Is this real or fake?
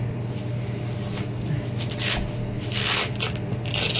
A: real